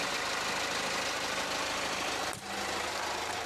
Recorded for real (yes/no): yes